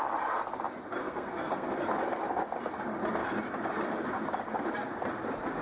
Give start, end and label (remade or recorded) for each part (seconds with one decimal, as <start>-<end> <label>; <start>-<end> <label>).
0.0-1.0 recorded; 1.0-1.7 remade; 1.7-5.6 recorded